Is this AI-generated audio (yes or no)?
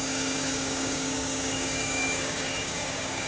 yes